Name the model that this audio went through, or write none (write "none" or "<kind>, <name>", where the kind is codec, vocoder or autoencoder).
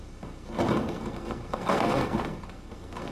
codec, SNAC